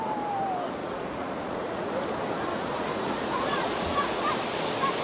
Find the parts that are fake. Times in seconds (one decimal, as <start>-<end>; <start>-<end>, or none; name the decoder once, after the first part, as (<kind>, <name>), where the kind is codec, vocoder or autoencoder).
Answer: 0.8-1.9 (vocoder, Vocos); 2.5-4.3